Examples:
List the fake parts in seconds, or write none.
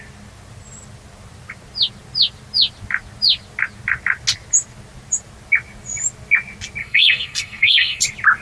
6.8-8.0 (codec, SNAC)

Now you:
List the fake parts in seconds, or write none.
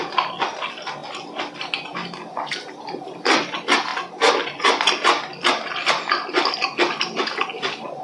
none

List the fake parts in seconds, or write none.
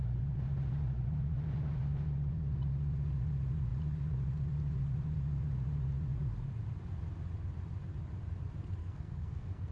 8.8-9.7 (codec, SNAC)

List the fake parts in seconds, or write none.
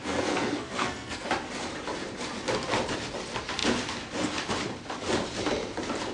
0.0-1.3 (codec, SNAC)